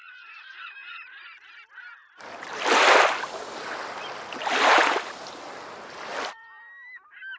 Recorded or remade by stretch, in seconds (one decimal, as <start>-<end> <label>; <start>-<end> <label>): 0.0-1.5 remade; 1.5-7.4 recorded